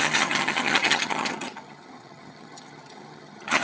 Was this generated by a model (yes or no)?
yes